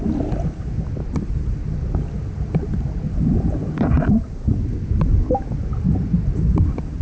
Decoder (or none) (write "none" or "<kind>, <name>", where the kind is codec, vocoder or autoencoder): none